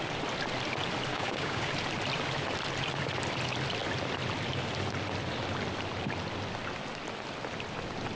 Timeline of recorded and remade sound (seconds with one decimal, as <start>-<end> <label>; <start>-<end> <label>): 0.0-1.1 recorded; 1.1-1.7 remade; 1.7-8.2 recorded